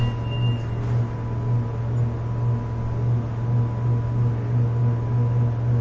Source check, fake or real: real